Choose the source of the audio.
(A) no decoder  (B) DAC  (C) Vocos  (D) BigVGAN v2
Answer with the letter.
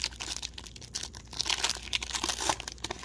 A